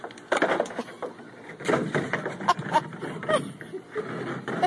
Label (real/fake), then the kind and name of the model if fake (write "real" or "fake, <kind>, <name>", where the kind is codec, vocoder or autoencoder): real